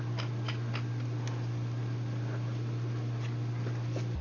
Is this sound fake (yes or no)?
no